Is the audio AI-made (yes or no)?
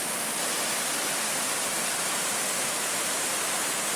no